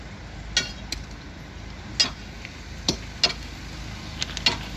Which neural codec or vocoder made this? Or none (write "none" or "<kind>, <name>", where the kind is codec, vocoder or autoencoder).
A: none